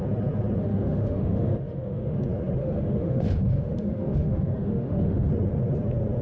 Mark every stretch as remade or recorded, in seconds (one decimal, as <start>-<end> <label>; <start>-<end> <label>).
0.0-0.6 recorded; 0.6-2.2 remade; 2.2-2.6 recorded; 2.6-5.3 remade; 5.3-6.2 recorded